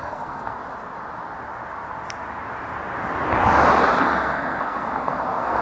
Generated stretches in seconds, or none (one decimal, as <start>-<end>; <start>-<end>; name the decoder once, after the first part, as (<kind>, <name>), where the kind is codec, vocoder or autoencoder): 0.0-0.6 (codec, SNAC); 4.0-5.6